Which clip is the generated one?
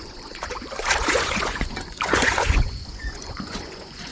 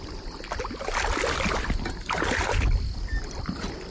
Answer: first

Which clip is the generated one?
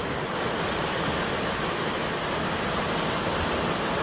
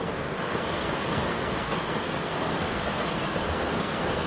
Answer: second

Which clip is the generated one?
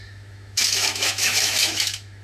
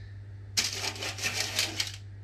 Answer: first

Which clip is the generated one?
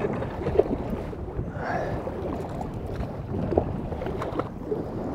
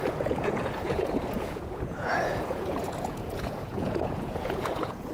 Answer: second